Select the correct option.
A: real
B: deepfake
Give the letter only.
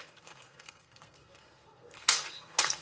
B